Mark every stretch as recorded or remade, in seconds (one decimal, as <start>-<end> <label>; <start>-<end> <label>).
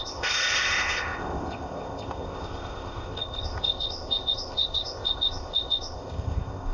0.0-6.7 remade